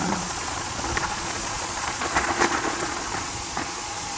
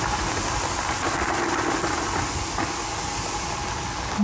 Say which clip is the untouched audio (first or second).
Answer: second